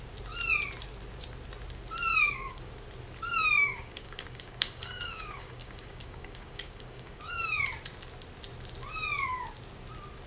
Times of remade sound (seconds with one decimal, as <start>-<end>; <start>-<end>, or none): 2.1-2.6; 3.4-7.6